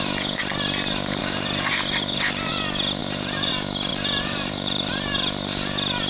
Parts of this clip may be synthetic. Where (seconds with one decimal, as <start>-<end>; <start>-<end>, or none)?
1.2-2.5; 3.0-3.5; 3.9-4.9